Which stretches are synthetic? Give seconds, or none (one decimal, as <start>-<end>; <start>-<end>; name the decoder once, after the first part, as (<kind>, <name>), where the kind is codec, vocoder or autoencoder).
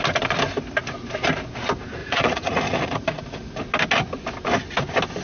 2.0-3.6 (vocoder, Vocos)